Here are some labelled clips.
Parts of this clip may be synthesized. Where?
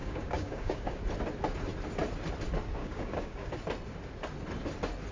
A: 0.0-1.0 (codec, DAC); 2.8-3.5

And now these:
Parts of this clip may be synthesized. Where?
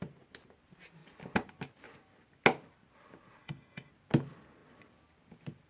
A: 3.4-3.9 (codec, DAC)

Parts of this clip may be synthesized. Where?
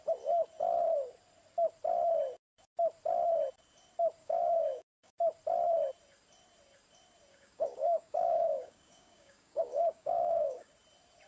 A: 4.2-5.1 (codec, DAC); 7.3-10.7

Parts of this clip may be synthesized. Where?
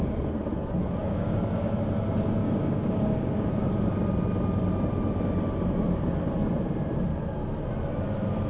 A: 1.0-1.7 (codec, DAC); 2.4-3.5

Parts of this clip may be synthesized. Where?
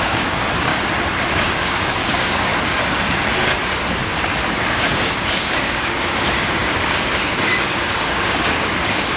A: 0.0-0.7 (codec, DAC); 1.3-2.5; 4.7-9.2